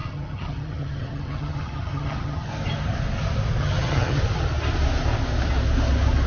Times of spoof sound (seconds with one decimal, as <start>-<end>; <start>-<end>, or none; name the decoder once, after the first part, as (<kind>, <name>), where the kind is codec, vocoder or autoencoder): 0.0-2.5 (vocoder, HiFi-GAN); 3.6-4.2